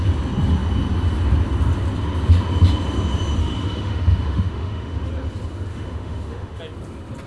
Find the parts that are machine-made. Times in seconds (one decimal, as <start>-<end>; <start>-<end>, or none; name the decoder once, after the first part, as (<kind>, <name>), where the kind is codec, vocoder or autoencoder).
3.4-5.1 (autoencoder, DAC-VAE); 5.7-6.6